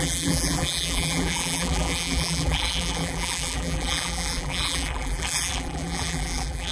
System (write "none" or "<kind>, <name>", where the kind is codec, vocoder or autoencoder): vocoder, BigVGAN v2